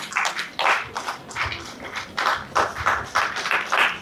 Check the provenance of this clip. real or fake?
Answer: real